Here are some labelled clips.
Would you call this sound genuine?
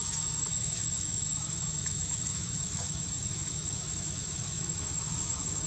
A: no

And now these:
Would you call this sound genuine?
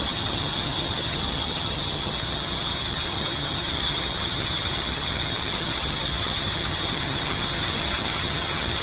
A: no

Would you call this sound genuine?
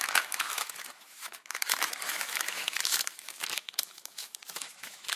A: no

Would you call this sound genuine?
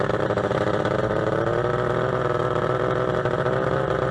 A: yes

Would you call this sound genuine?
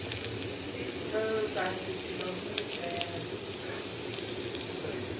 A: yes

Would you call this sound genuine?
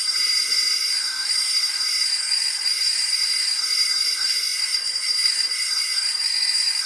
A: no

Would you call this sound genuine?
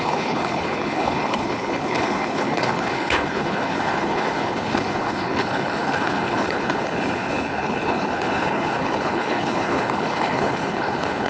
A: no